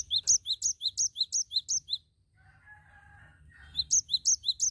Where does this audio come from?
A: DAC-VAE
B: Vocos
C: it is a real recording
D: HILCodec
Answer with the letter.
C